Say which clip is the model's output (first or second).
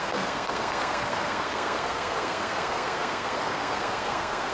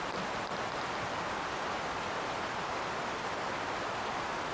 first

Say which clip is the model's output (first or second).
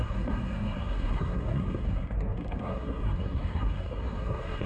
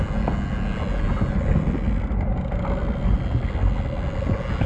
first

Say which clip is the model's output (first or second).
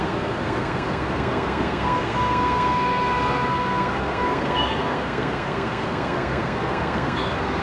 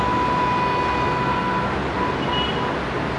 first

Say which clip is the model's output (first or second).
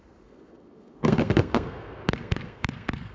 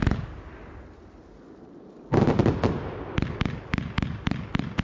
first